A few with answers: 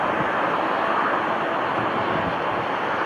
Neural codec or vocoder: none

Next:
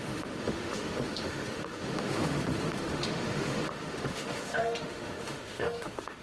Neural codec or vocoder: autoencoder, DAC-VAE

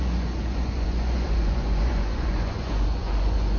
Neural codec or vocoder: vocoder, Vocos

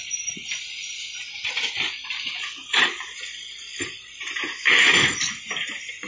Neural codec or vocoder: none